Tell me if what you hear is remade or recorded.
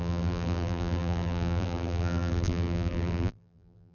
remade